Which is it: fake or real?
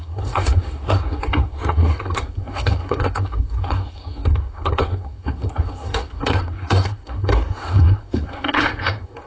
fake